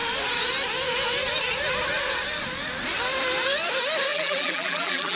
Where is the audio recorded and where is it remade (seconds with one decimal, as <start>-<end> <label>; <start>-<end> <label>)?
0.0-4.1 recorded; 4.1-5.2 remade